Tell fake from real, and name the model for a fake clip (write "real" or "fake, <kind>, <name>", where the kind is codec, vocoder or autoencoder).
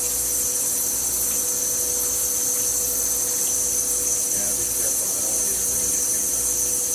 real